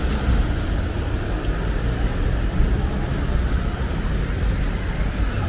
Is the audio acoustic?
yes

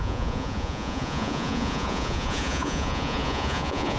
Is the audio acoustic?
no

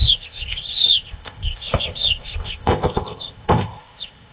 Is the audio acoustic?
no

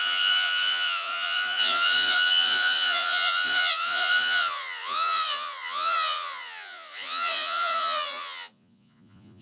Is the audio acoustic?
no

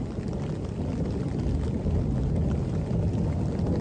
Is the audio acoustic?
yes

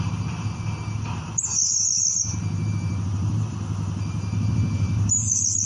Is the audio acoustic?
yes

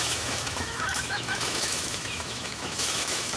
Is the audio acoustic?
no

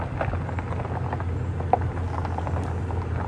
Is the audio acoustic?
yes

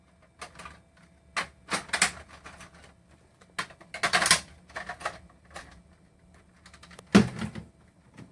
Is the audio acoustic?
yes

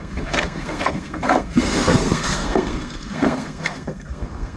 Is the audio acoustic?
no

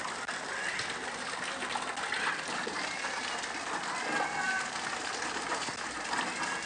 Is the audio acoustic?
yes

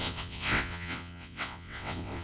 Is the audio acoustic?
no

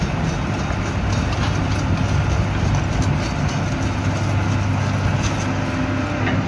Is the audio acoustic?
yes